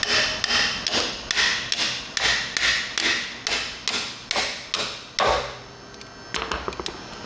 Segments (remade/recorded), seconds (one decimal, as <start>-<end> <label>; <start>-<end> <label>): 0.0-7.3 recorded